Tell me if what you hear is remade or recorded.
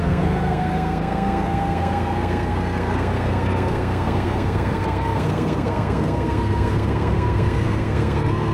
remade